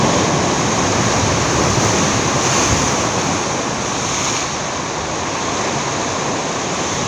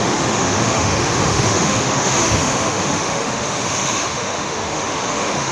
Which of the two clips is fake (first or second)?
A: second